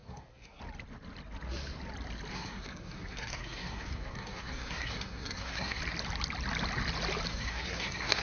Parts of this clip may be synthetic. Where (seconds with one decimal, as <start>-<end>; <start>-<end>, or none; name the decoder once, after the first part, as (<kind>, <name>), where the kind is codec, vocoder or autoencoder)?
0.0-0.6 (codec, SNAC); 2.3-5.8; 7.3-8.2